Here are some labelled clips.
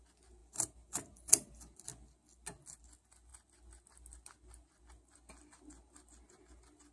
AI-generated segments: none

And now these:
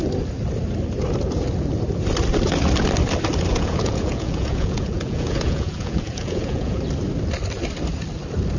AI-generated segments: 3.5-6.8 (vocoder, Vocos)